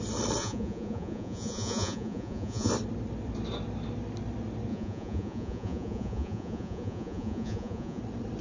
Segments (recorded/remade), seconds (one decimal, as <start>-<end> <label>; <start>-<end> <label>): 0.0-0.4 recorded; 0.4-2.7 remade; 2.7-4.7 recorded; 4.7-8.0 remade; 8.0-8.4 recorded